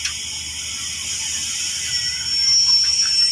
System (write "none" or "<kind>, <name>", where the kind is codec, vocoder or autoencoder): none